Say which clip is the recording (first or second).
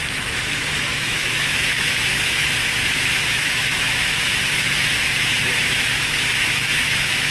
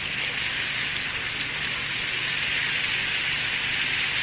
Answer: second